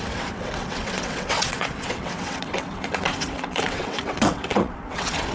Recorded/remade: remade